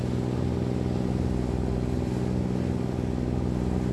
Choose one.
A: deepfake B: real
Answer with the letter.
B